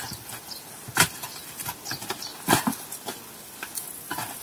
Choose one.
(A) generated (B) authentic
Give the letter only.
B